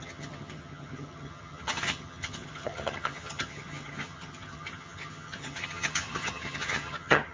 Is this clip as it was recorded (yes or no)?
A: no